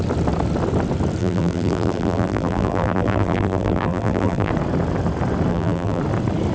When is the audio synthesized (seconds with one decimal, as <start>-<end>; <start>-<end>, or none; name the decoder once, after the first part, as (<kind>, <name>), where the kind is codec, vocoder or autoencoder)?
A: 1.2-4.5 (vocoder, BigVGAN v2); 5.5-6.0